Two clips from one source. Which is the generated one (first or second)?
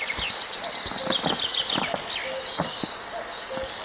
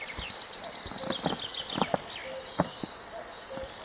second